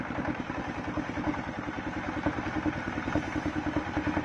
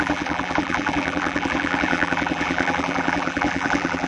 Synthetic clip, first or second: second